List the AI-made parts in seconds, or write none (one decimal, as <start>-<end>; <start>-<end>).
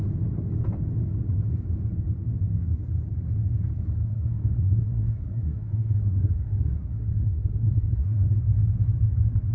4.0-8.4